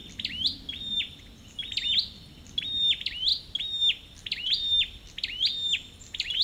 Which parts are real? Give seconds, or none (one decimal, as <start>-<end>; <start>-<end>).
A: 0.0-6.4